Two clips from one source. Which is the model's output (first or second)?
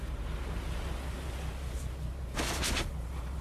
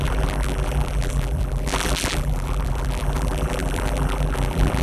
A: second